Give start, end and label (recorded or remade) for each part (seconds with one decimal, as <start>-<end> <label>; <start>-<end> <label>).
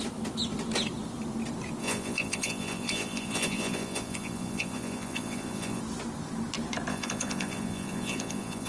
0.0-1.8 recorded; 1.8-5.8 remade; 5.8-6.9 recorded; 6.9-8.7 remade